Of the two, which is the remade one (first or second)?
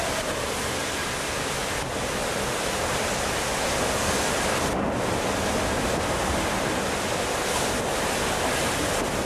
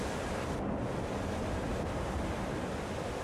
second